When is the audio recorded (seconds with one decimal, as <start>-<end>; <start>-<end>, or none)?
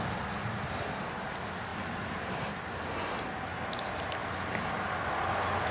0.0-1.7; 2.5-5.7